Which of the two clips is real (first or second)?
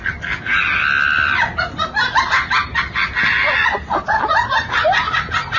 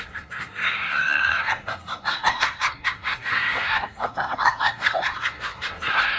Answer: first